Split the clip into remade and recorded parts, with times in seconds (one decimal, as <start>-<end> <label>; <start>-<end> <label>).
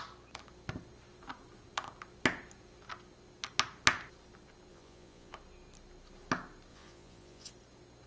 0.0-4.7 recorded; 4.7-5.3 remade; 5.3-6.7 recorded; 6.7-7.5 remade; 7.5-8.1 recorded